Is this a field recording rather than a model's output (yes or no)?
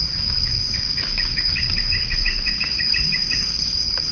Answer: no